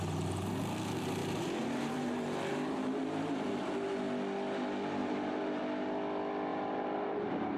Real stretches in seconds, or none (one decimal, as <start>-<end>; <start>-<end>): 0.0-1.2; 3.5-5.0; 5.6-6.5